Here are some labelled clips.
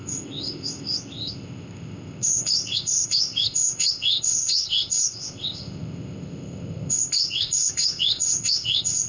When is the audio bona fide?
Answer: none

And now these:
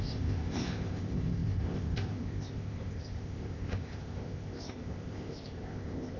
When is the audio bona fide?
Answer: none

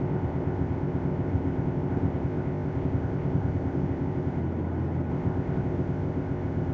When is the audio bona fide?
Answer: 4.4-5.1

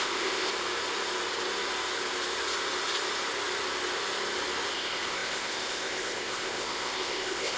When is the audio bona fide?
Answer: 0.5-4.7